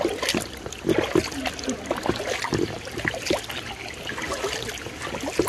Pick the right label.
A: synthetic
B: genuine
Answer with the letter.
B